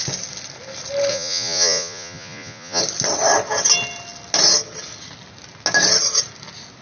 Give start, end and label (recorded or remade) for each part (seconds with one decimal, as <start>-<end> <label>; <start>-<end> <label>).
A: 0.0-1.1 recorded; 1.1-2.8 remade; 2.8-6.8 recorded